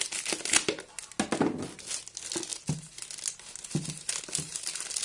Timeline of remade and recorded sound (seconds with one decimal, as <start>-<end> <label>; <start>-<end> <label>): 0.0-5.0 recorded